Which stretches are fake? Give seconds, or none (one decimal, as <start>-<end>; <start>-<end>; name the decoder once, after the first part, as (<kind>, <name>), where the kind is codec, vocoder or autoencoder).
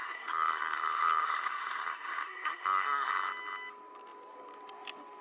0.0-3.1 (codec, SNAC)